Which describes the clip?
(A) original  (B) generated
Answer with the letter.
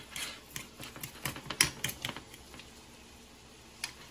A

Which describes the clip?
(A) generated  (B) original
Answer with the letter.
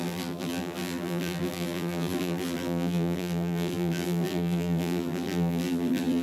A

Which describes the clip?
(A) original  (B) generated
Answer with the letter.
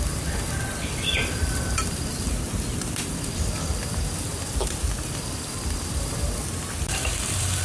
B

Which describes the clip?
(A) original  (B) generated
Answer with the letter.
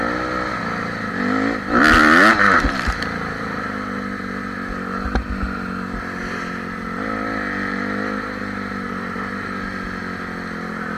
A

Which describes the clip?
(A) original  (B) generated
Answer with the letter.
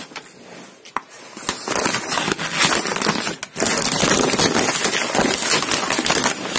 A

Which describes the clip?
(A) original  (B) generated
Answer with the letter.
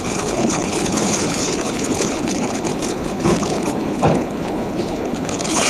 B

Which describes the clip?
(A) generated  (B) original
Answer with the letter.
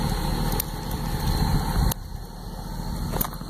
B